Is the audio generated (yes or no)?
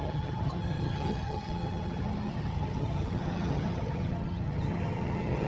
yes